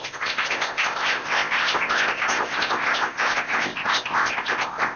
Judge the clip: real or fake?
fake